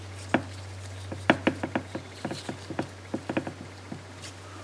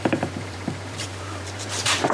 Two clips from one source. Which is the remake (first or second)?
second